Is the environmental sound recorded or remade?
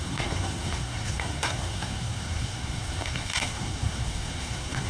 remade